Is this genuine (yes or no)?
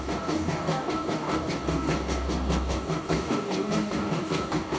no